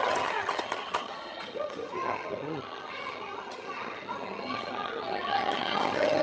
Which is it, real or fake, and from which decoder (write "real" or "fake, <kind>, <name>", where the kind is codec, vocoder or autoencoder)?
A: fake, vocoder, HiFi-GAN